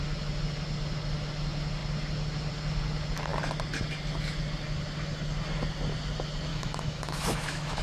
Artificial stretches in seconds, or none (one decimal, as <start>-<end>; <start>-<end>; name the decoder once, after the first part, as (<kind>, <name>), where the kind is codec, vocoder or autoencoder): 6.5-7.8 (autoencoder, DAC-VAE)